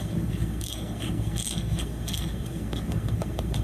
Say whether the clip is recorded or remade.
remade